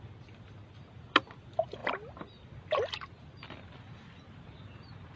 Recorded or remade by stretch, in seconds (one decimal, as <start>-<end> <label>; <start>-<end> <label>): 0.0-5.2 recorded